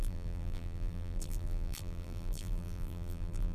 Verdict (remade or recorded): remade